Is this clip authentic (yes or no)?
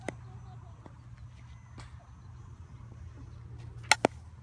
yes